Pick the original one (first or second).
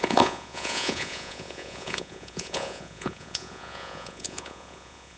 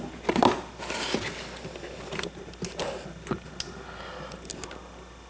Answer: second